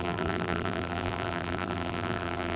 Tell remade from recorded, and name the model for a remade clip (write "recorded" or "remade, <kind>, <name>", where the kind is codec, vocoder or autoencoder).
remade, vocoder, BigVGAN v2